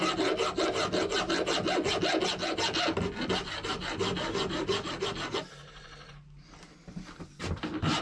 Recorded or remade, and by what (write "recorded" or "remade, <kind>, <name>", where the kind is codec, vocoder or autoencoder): recorded